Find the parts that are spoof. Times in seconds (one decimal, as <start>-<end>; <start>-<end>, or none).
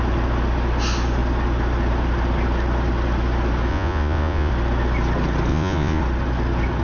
3.7-4.5; 5.5-6.0